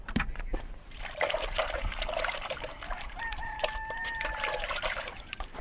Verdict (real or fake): fake